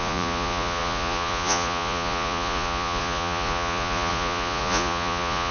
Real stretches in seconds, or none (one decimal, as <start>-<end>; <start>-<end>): none